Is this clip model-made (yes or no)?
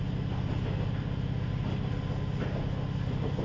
no